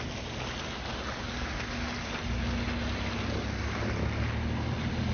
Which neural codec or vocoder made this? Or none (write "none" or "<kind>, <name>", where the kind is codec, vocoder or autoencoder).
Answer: none